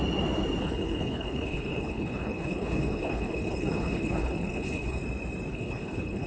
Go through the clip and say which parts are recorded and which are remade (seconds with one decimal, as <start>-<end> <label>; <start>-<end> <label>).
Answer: 0.0-0.6 recorded; 0.6-5.0 remade; 5.0-5.5 recorded; 5.5-6.3 remade